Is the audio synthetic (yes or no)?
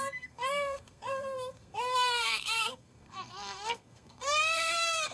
yes